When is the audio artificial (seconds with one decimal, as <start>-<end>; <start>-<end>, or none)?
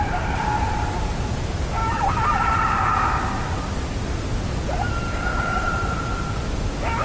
1.8-3.1; 4.0-4.7; 5.3-6.1